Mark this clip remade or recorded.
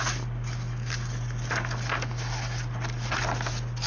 recorded